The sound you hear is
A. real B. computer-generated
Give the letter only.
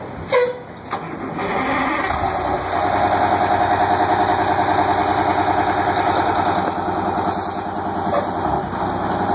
A